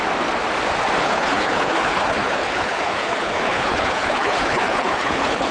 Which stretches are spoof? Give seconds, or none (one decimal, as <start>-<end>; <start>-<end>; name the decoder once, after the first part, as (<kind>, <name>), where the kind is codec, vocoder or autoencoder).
1.0-5.5 (codec, HILCodec)